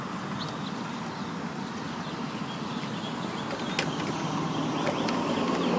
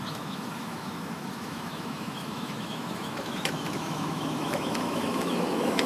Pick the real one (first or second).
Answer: first